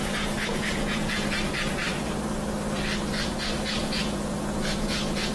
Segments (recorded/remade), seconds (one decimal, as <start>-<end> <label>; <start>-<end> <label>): 0.0-1.3 remade; 1.3-3.8 recorded; 3.8-5.3 remade

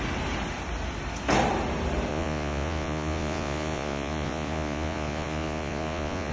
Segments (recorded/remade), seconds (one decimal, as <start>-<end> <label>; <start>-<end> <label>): 0.0-2.1 recorded; 2.1-6.3 remade

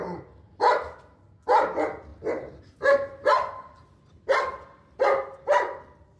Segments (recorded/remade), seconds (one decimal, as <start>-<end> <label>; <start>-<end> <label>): 0.0-6.2 recorded

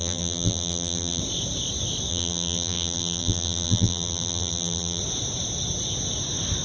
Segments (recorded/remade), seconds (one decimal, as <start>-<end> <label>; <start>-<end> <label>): 0.0-1.2 remade; 1.2-2.1 recorded; 2.1-5.0 remade; 5.0-6.6 recorded

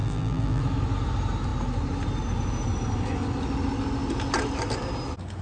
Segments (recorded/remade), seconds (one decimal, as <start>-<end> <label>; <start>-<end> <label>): 0.0-0.6 remade; 0.6-5.4 recorded

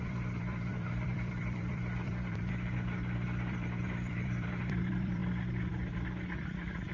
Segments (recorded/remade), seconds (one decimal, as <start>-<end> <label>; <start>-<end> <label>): 0.0-5.2 remade; 5.2-5.7 recorded; 5.7-6.9 remade